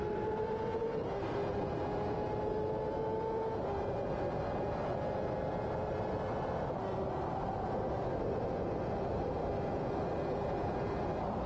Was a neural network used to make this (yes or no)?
no